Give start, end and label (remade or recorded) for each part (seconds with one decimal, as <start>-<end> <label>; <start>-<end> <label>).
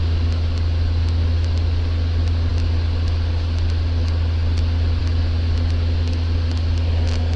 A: 0.0-7.4 recorded